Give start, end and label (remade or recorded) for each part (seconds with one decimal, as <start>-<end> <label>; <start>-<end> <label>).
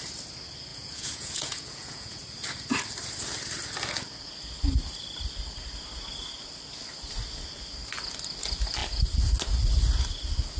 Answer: 0.0-0.7 recorded; 0.7-2.2 remade; 2.2-10.6 recorded